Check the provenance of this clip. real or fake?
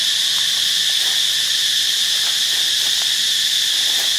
real